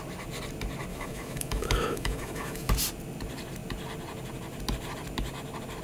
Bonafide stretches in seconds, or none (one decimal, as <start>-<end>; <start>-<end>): 0.0-0.9; 2.7-5.8

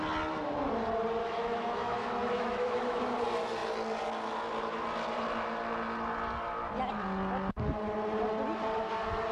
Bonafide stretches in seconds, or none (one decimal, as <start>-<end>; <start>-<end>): 0.0-1.2; 3.0-9.3